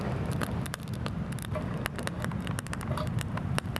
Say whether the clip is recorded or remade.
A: recorded